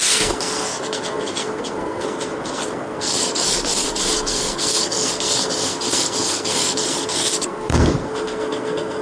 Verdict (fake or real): fake